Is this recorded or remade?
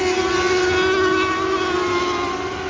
recorded